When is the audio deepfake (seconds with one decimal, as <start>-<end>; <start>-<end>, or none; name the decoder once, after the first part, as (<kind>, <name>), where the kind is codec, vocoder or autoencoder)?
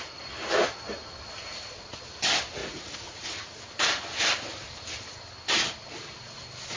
2.6-3.6 (vocoder, Vocos)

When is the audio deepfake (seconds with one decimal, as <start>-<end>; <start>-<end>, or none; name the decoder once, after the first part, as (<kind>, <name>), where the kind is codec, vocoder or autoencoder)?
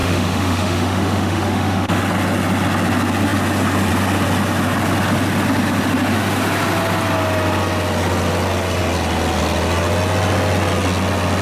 0.0-2.0 (autoencoder, DAC-VAE)